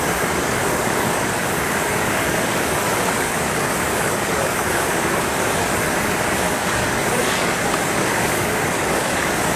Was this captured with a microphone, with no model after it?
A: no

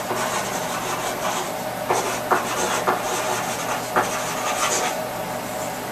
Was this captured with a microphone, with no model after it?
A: yes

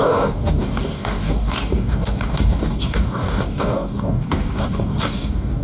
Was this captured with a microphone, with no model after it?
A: no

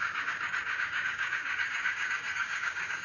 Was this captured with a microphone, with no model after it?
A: no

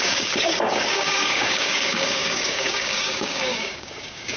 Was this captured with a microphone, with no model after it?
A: no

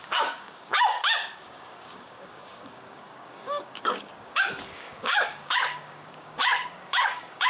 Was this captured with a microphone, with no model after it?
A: no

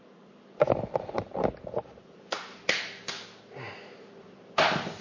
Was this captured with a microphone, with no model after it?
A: yes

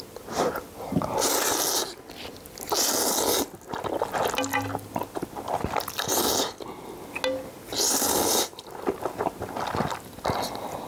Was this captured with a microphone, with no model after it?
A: yes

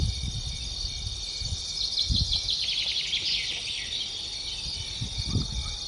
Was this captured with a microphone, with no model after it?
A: yes